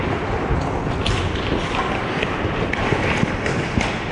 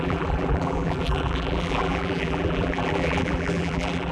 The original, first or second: first